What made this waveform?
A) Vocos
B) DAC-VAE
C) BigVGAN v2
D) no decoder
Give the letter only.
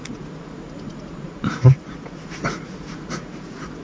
A